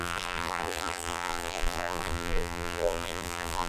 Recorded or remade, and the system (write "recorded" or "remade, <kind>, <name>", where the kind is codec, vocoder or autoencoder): remade, vocoder, BigVGAN v2